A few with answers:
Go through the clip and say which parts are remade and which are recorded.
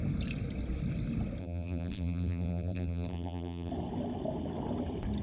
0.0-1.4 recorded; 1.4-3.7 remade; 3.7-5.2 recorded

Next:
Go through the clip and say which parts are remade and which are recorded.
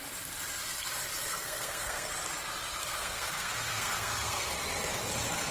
0.0-1.3 recorded; 1.3-2.1 remade; 2.1-2.8 recorded; 2.8-4.5 remade; 4.5-5.5 recorded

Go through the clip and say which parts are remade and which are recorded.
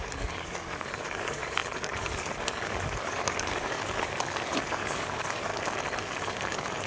0.0-5.5 remade; 5.5-6.2 recorded; 6.2-6.9 remade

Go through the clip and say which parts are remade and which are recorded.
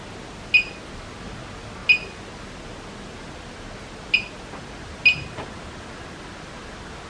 0.0-7.1 recorded